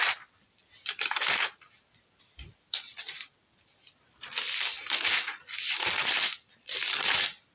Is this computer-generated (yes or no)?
yes